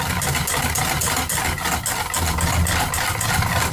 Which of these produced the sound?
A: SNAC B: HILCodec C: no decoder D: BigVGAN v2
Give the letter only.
C